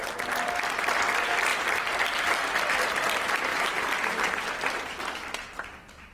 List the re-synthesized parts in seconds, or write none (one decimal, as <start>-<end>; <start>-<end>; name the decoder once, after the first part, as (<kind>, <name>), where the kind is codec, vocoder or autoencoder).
none